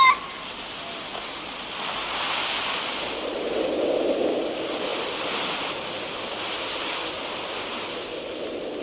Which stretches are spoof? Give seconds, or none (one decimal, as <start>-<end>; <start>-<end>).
none